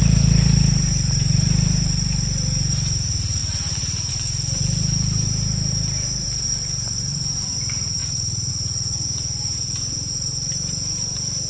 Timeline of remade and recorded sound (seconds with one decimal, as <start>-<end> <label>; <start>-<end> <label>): 0.0-11.5 remade